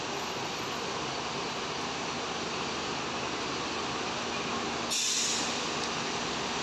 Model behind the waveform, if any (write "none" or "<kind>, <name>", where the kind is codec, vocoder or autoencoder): none